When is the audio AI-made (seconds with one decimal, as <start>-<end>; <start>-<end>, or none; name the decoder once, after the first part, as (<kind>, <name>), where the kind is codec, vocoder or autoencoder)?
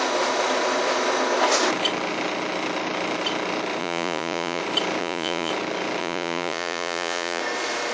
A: 3.8-4.6 (vocoder, Vocos); 5.0-5.5; 6.0-7.4